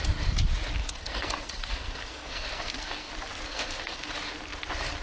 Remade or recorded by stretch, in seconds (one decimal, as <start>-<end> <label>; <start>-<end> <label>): 0.0-0.8 recorded; 0.8-3.1 remade; 3.1-3.5 recorded; 3.5-4.1 remade; 4.1-5.0 recorded